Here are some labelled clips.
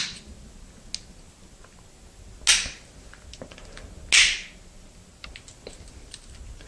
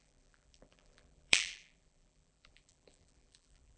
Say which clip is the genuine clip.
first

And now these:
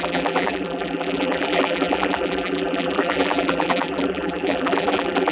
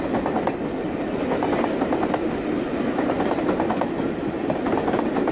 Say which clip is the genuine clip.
second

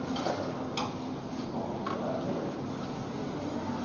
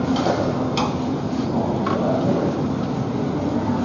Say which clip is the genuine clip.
first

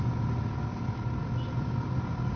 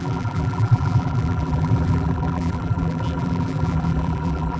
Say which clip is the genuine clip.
first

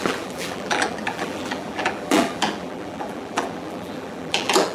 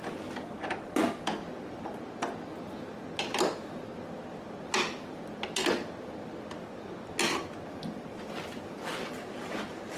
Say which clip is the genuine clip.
second